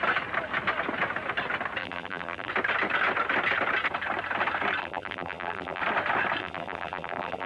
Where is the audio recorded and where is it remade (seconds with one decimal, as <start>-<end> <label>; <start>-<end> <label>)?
0.0-1.8 recorded; 1.8-2.5 remade; 2.5-4.8 recorded; 4.8-5.8 remade; 5.8-6.4 recorded; 6.4-7.5 remade